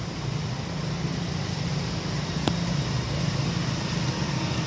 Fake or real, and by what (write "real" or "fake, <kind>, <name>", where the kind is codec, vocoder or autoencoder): real